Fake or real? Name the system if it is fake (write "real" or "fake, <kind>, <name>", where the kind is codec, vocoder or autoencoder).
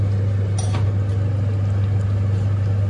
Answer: real